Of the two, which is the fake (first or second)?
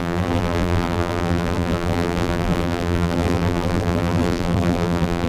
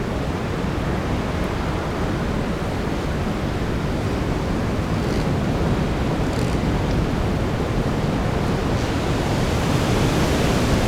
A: first